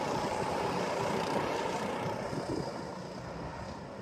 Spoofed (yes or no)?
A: no